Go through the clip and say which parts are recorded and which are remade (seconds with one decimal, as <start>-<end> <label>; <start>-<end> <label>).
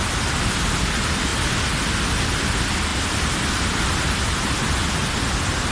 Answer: 0.0-5.7 recorded